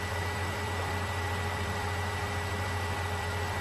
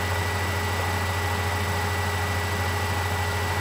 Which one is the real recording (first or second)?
second